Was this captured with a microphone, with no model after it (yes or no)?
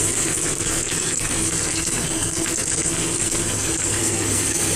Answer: no